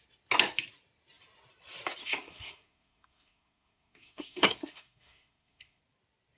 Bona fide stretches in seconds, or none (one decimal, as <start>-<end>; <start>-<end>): 0.0-2.0; 5.8-6.4